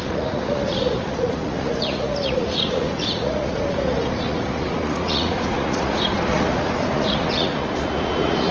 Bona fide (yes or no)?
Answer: no